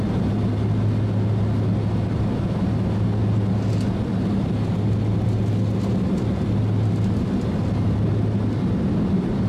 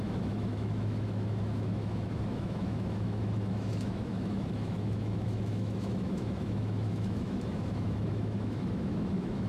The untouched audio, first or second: first